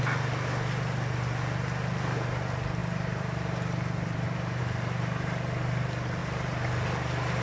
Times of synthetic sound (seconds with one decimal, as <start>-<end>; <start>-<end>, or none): 2.8-4.6